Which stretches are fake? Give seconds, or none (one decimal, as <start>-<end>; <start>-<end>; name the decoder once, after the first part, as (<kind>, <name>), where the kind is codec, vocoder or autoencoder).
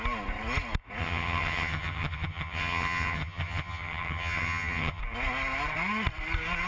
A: 1.0-5.0 (vocoder, HiFi-GAN)